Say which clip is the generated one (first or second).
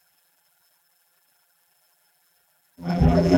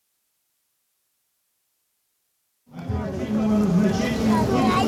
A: first